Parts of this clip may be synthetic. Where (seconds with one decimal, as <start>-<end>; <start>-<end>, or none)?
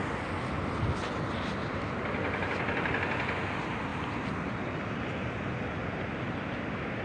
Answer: none